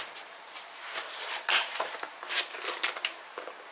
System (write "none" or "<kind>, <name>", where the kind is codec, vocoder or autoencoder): vocoder, BigVGAN v2